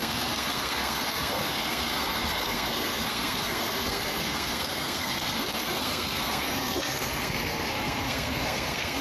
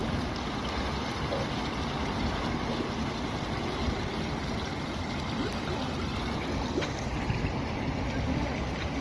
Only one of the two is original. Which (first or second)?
second